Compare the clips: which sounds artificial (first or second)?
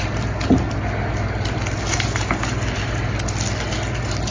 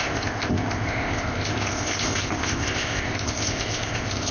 second